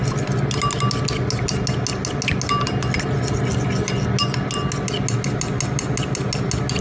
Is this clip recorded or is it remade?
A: recorded